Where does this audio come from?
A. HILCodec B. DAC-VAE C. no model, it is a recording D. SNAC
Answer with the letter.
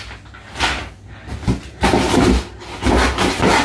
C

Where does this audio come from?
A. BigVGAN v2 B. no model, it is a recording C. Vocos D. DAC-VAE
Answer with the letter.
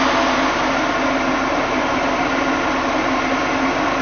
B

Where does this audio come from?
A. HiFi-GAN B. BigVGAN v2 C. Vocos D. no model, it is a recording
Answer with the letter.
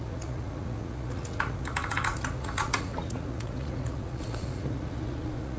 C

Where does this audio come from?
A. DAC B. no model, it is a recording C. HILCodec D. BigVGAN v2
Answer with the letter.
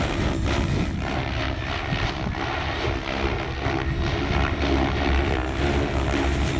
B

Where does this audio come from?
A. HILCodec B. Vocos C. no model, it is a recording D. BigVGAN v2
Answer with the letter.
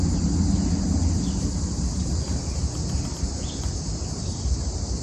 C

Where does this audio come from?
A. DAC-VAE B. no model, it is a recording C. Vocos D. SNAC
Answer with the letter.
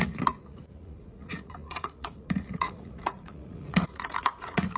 C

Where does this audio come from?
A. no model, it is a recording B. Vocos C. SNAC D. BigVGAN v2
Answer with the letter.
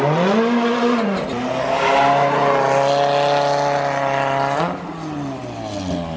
A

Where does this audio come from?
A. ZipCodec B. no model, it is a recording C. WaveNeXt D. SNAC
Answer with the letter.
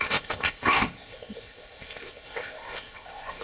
A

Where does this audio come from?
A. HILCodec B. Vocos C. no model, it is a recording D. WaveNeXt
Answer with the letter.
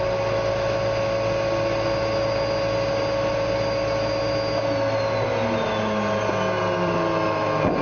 C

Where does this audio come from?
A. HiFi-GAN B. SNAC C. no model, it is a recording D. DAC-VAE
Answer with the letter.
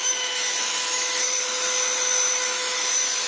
D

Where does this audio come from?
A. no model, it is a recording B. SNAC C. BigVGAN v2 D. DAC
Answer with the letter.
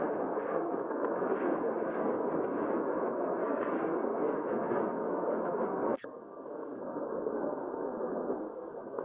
B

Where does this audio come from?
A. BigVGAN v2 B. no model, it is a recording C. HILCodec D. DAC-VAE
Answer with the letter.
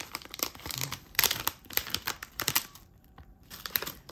A